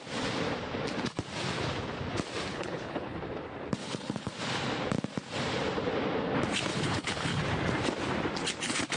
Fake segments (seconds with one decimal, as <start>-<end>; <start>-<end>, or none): 2.5-3.2; 3.8-4.3; 6.7-7.4